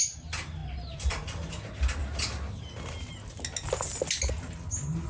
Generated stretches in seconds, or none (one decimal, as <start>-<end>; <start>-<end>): none